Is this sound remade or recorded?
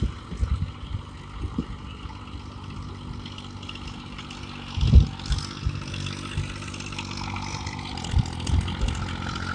recorded